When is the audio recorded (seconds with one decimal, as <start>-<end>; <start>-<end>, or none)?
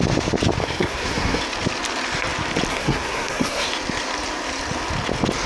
0.0-0.6; 1.4-2.7; 3.7-5.5